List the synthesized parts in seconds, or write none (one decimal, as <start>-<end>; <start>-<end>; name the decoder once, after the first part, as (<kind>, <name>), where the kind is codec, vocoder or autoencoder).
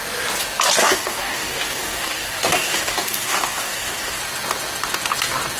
0.8-4.2 (codec, DAC)